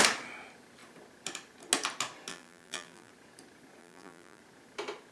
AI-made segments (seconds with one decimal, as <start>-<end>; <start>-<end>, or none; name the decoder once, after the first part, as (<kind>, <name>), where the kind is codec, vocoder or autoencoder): 2.3-3.1 (vocoder, BigVGAN v2); 3.8-4.4